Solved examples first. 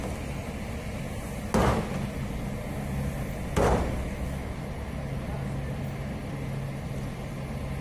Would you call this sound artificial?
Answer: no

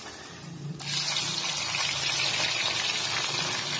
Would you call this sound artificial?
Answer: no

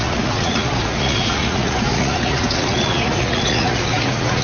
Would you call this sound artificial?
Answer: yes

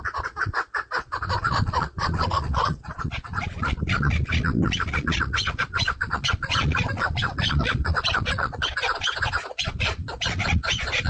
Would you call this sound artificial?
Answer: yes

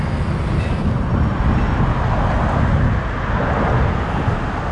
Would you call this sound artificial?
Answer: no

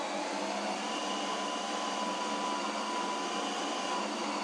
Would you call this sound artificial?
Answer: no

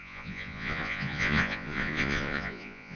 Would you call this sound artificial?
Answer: yes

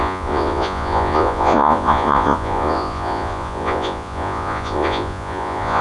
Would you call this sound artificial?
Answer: yes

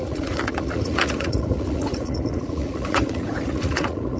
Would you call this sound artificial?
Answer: yes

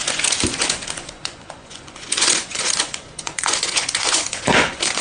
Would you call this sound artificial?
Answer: yes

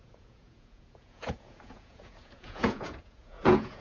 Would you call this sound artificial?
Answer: yes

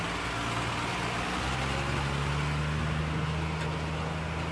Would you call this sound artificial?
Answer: no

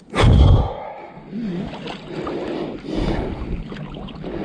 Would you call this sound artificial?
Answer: no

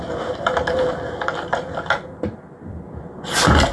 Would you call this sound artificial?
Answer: no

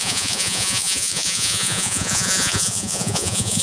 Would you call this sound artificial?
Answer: yes